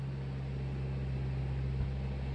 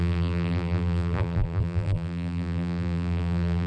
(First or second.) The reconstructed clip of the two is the second